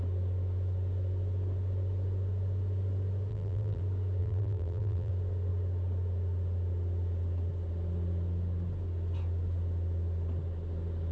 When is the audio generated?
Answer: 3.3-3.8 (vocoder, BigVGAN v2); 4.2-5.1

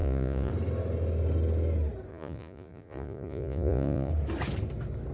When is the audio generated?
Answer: 0.0-0.5 (vocoder, Vocos); 2.1-4.1

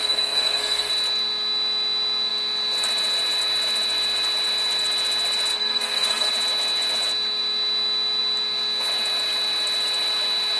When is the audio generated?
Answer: 0.0-0.9 (codec, SNAC); 5.5-6.3

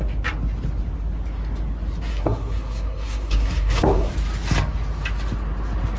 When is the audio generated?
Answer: 2.1-4.1 (codec, SNAC)

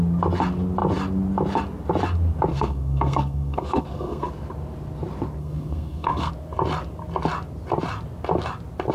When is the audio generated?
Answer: 2.5-4.3 (codec, SNAC); 5.4-6.3

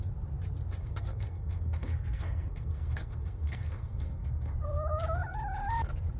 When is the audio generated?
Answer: 0.8-4.5 (codec, SNAC)

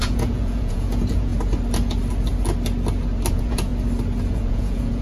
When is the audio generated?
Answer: 0.0-1.3 (vocoder, Vocos); 3.3-3.7; 4.3-5.0